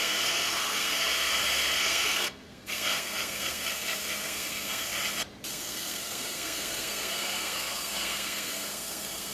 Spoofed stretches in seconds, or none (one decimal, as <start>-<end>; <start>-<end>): 0.0-4.9; 5.5-9.3